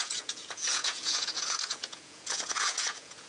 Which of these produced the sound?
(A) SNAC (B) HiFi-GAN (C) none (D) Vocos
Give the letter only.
D